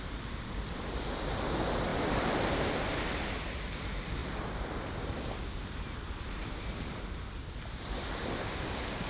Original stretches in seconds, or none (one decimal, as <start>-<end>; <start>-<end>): 0.0-1.9; 3.3-9.1